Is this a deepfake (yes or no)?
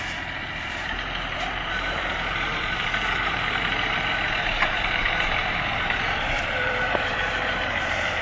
yes